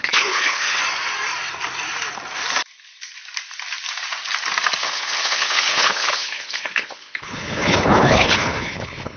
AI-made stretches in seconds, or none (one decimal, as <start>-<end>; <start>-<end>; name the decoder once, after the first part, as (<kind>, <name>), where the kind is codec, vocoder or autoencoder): 0.0-0.8 (codec, HILCodec); 4.8-9.2

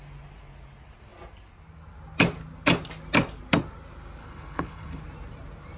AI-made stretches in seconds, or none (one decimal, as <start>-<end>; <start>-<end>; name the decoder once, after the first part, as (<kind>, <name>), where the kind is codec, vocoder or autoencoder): 4.2-5.0 (codec, HILCodec)